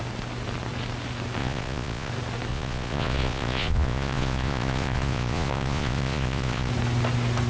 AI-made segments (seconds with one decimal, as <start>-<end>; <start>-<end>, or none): 1.4-2.1; 2.5-6.7